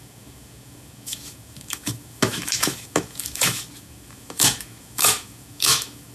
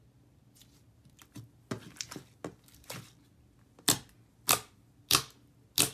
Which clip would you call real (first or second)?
second